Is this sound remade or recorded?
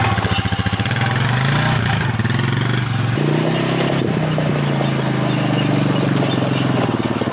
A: recorded